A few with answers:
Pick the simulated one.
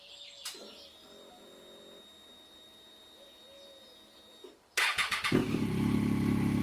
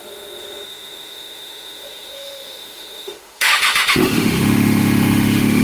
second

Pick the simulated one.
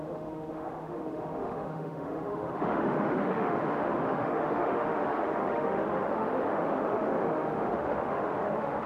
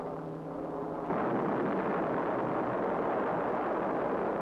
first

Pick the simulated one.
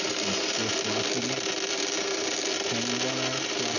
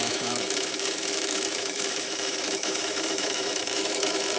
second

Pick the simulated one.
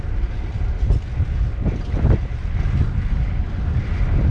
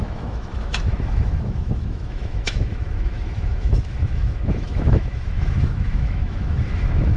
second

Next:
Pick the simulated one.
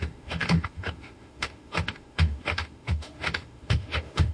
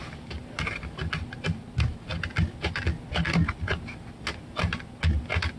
first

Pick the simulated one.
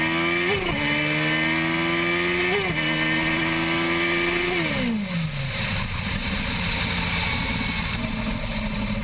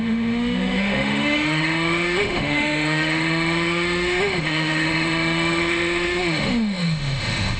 second